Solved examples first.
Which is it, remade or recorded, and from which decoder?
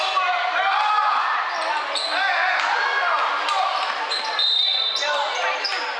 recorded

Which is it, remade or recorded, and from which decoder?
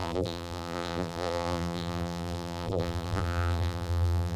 remade, vocoder, BigVGAN v2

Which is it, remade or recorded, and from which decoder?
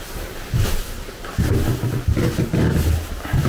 recorded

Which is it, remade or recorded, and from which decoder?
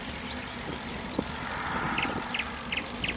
recorded